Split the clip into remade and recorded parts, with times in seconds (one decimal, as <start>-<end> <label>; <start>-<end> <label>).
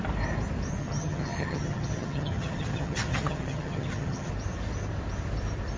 0.0-0.8 recorded; 0.8-4.3 remade; 4.3-5.8 recorded